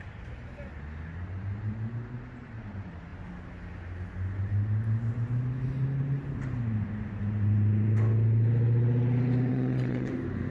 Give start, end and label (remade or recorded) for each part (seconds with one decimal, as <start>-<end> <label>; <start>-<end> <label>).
0.0-9.5 recorded; 9.5-10.1 remade; 10.1-10.5 recorded

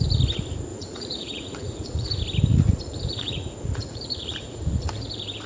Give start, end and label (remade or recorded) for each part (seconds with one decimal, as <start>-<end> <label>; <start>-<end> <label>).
0.0-0.7 recorded; 0.7-2.1 remade; 2.1-2.5 recorded; 2.5-5.1 remade; 5.1-5.5 recorded

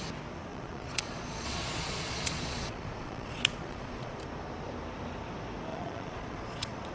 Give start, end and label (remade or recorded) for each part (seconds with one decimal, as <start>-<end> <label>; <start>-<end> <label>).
0.0-0.5 recorded; 0.5-4.2 remade; 4.2-5.7 recorded; 5.7-6.9 remade

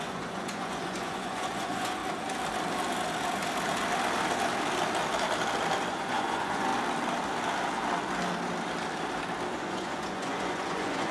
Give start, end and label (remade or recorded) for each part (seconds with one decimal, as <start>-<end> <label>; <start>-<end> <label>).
0.0-2.0 remade; 2.0-5.9 recorded; 5.9-6.7 remade; 6.7-9.5 recorded; 9.5-11.1 remade

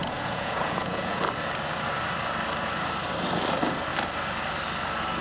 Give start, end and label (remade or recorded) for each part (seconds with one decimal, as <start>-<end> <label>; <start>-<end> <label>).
0.0-1.2 remade; 1.2-5.2 recorded